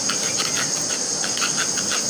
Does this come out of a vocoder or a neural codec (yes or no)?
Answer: no